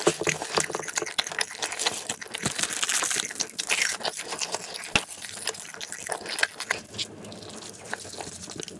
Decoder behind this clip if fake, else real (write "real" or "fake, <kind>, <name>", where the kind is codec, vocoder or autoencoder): real